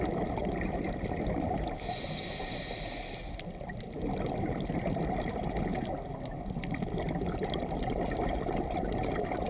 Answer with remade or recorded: recorded